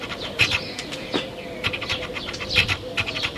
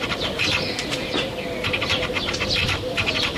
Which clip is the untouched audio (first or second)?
first